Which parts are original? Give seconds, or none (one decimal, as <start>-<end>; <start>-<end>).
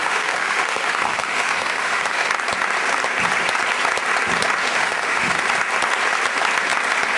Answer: 2.3-4.6; 5.4-7.2